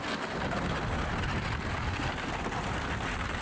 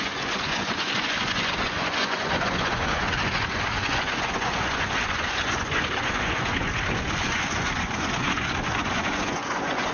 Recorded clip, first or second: first